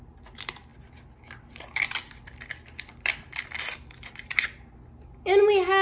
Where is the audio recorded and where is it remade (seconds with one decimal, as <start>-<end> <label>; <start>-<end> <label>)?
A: 0.0-5.8 recorded